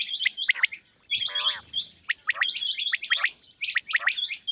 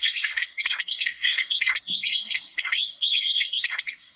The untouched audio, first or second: first